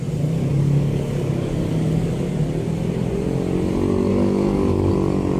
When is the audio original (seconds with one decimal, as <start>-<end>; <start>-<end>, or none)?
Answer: 0.0-0.5; 2.1-4.1; 4.9-5.4